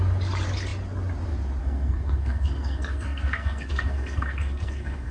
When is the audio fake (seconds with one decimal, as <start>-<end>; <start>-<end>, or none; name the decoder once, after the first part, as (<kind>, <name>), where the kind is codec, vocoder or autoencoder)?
1.6-5.1 (codec, SNAC)